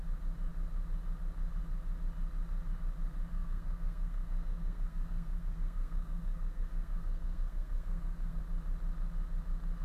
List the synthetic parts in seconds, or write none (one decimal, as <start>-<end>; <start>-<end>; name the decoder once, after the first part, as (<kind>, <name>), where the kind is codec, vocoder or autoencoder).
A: 3.3-8.4 (codec, SNAC)